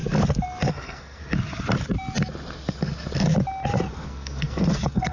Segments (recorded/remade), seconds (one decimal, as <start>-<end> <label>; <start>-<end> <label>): 0.0-0.7 recorded; 0.7-1.2 remade; 1.2-3.9 recorded; 3.9-5.1 remade